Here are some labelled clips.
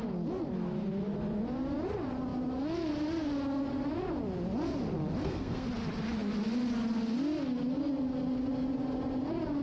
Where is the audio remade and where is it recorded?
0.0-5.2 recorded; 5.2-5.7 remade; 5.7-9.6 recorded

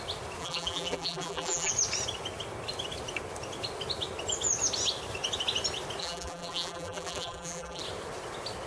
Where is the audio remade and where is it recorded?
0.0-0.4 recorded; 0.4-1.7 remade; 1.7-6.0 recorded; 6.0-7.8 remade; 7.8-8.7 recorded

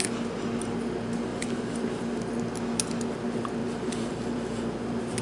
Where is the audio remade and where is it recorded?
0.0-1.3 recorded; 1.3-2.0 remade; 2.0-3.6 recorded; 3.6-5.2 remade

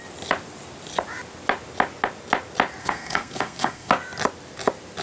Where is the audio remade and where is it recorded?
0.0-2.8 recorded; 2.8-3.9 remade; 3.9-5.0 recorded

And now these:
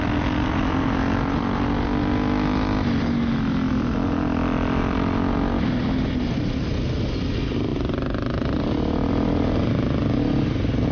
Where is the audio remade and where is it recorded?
0.0-10.9 recorded

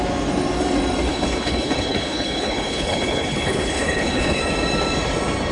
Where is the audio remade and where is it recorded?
0.0-1.1 recorded; 1.1-4.4 remade; 4.4-5.5 recorded

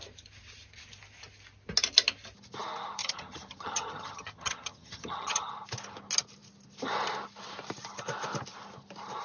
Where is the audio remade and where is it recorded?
0.0-3.0 recorded; 3.0-5.5 remade; 5.5-9.2 recorded

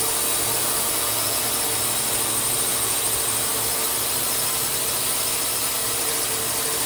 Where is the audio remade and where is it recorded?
0.0-0.6 recorded; 0.6-1.4 remade; 1.4-2.7 recorded; 2.7-3.2 remade; 3.2-6.9 recorded